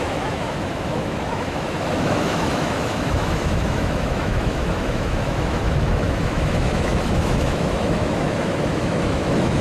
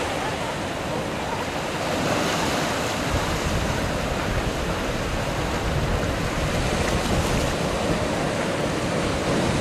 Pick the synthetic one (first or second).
first